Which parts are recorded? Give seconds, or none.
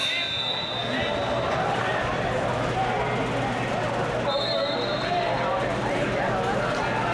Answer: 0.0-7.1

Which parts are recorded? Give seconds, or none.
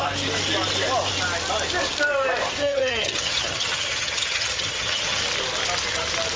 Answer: 0.0-2.6; 5.2-6.4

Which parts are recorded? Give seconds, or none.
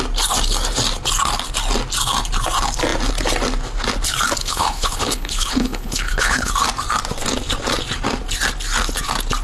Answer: 0.0-4.4; 6.5-9.4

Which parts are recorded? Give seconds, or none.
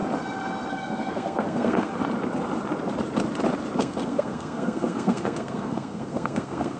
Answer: 0.0-0.7; 1.9-3.8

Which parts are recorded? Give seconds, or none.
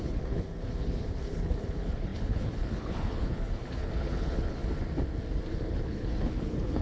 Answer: 4.6-5.5